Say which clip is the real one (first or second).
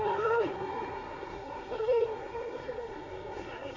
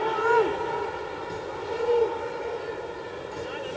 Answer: second